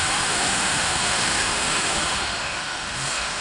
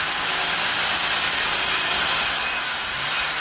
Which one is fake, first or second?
first